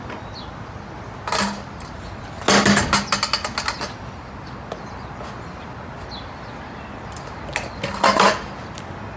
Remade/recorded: recorded